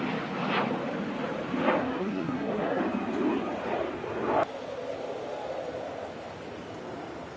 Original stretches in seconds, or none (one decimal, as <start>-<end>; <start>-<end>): 0.0-1.8; 2.8-7.4